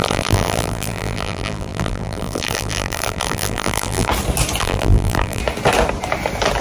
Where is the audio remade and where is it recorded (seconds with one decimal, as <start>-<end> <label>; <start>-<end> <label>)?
0.0-4.1 remade; 4.1-4.6 recorded; 4.6-5.4 remade; 5.4-6.6 recorded